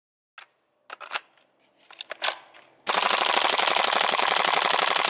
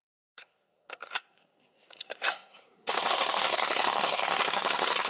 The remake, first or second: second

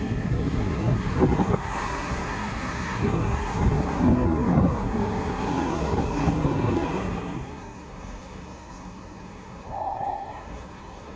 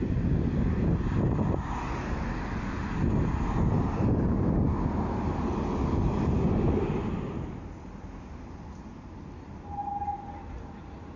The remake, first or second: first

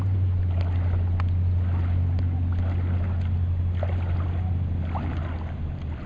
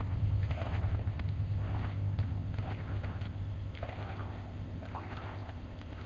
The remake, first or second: second